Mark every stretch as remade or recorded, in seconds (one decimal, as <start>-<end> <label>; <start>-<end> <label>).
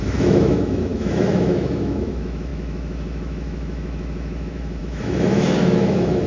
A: 0.0-6.3 remade